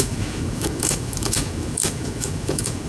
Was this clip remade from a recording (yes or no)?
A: yes